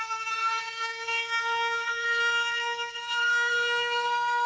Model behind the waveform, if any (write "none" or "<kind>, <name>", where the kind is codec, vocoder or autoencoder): autoencoder, DAC-VAE